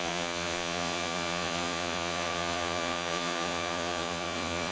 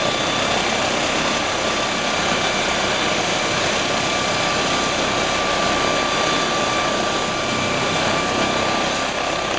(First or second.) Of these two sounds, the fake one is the first